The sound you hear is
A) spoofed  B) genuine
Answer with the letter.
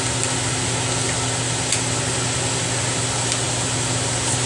B